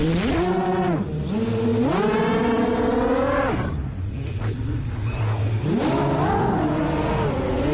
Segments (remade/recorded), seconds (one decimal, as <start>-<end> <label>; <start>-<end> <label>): 0.0-7.7 recorded